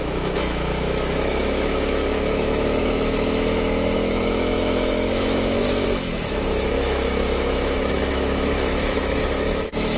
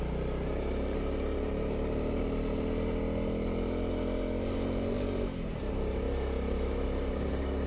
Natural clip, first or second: second